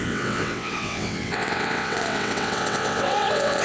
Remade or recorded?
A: remade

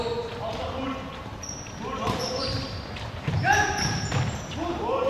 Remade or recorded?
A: remade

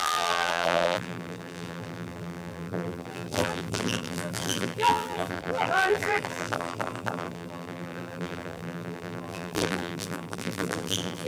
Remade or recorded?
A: remade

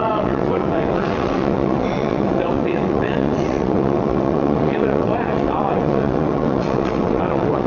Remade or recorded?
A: remade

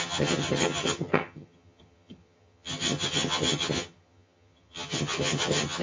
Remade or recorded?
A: remade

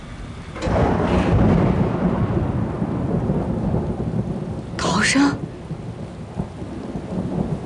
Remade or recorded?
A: recorded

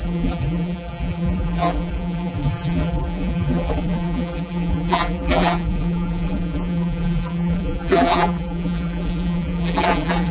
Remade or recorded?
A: remade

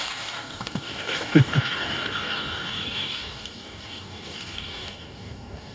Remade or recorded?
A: remade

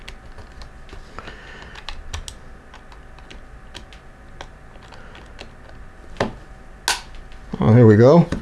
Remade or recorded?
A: recorded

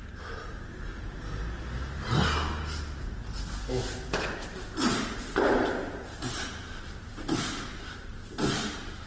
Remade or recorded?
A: recorded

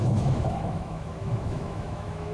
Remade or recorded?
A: remade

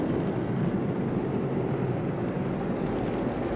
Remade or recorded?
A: recorded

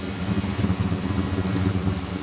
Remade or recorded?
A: recorded